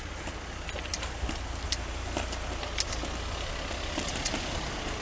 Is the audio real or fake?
real